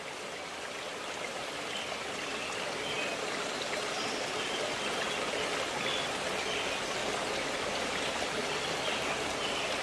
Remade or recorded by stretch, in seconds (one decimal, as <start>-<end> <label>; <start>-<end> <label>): 0.0-9.8 recorded